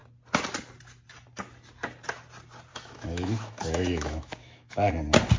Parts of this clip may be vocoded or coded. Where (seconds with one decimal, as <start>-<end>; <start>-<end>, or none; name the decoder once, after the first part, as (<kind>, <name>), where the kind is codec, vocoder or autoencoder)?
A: 2.7-4.9 (autoencoder, DAC-VAE)